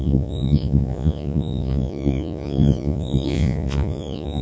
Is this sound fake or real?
fake